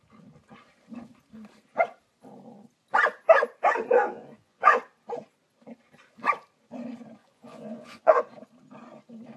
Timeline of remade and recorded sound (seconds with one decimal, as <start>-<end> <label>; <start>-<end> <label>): 0.0-4.0 recorded; 4.0-4.8 remade; 4.8-7.2 recorded; 7.2-8.2 remade; 8.2-9.4 recorded